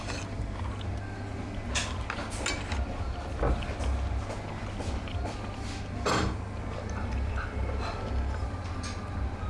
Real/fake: real